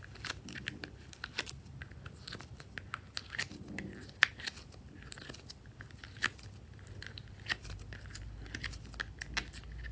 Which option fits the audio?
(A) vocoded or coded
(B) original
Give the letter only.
B